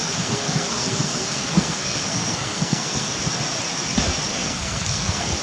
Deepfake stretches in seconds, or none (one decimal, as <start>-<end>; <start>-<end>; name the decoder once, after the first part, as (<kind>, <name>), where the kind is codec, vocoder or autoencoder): 0.0-3.2 (codec, SNAC); 4.3-5.4